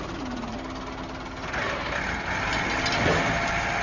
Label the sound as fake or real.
real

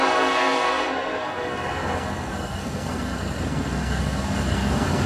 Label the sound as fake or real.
fake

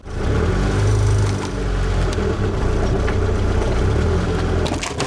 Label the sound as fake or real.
real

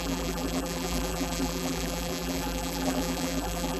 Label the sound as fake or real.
fake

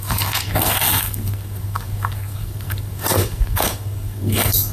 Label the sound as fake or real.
fake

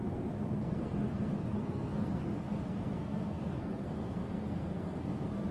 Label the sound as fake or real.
fake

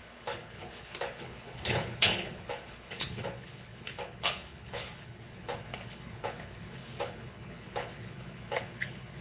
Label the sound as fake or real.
fake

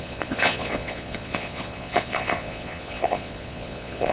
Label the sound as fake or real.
fake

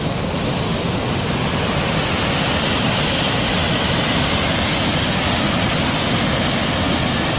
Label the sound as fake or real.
real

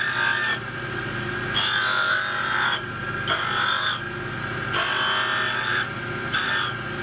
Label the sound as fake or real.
real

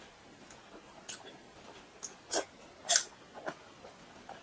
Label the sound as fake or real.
real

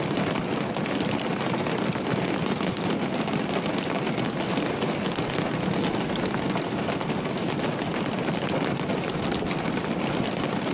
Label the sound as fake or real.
real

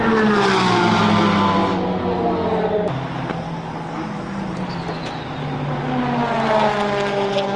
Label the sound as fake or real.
real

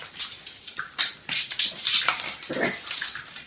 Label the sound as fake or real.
real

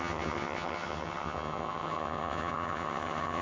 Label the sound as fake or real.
fake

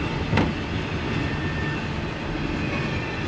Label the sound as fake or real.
real